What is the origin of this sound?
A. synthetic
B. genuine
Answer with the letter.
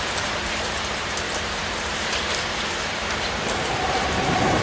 A